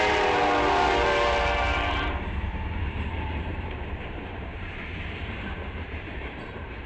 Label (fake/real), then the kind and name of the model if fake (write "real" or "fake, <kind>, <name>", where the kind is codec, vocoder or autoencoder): fake, vocoder, BigVGAN v2